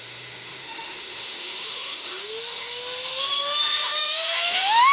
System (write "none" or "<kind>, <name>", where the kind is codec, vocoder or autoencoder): autoencoder, DAC-VAE